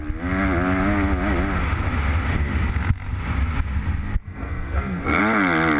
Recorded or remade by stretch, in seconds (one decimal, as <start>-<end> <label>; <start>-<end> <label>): 0.0-4.2 recorded; 4.2-5.2 remade; 5.2-5.8 recorded